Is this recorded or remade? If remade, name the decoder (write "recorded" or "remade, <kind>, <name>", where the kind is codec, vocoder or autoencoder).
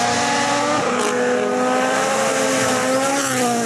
recorded